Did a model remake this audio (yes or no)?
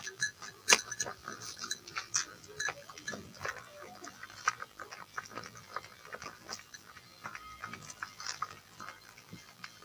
yes